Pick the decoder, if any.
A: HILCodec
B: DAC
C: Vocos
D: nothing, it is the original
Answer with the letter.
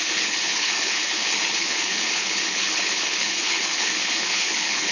A